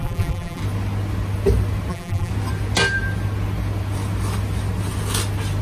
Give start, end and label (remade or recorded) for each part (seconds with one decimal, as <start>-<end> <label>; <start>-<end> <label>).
0.0-0.6 remade; 0.6-1.9 recorded; 1.9-2.3 remade; 2.3-5.6 recorded